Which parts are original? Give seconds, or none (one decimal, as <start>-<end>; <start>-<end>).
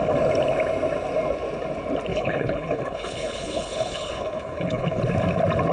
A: 0.0-2.1; 5.0-5.7